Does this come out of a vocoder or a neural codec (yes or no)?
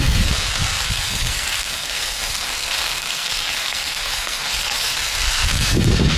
yes